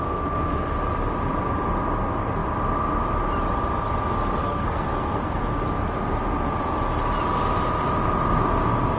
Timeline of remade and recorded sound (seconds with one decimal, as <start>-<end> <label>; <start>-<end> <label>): 0.0-4.4 recorded; 4.4-5.4 remade; 5.4-9.0 recorded